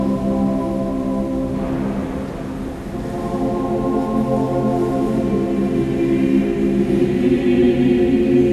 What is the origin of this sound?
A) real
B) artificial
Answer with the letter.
A